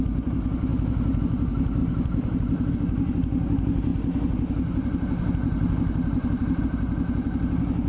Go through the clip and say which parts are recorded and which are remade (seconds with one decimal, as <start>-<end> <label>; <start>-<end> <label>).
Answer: 0.0-1.8 recorded; 1.8-2.7 remade; 2.7-7.9 recorded